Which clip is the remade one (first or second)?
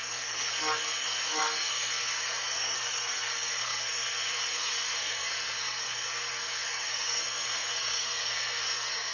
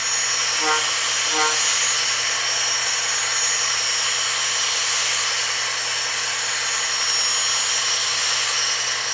first